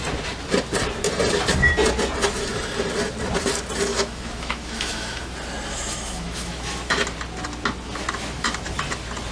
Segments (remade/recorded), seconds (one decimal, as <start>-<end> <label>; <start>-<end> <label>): 0.0-3.9 recorded; 3.9-5.3 remade; 5.3-5.7 recorded; 5.7-7.0 remade; 7.0-9.3 recorded